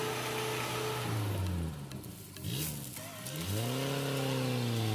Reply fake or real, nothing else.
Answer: real